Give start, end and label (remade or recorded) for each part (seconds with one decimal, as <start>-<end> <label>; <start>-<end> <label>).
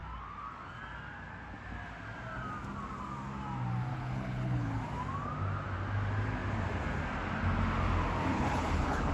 0.0-3.9 recorded; 3.9-4.8 remade; 4.8-8.3 recorded; 8.3-9.1 remade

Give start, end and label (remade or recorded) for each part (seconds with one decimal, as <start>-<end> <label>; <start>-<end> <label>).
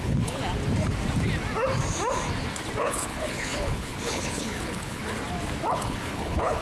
0.0-0.4 remade; 0.4-2.8 recorded; 2.8-5.0 remade; 5.0-5.7 recorded; 5.7-6.6 remade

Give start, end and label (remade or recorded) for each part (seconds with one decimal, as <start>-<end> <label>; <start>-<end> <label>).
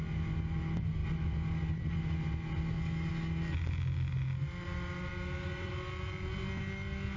0.0-7.2 recorded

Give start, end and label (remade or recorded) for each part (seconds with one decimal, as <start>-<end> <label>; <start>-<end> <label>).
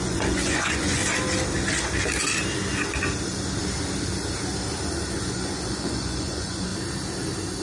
0.0-1.0 remade; 1.0-5.2 recorded; 5.2-6.7 remade; 6.7-7.6 recorded